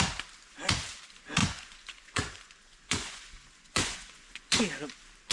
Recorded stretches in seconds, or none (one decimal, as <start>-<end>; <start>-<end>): 0.0-1.4; 4.6-5.3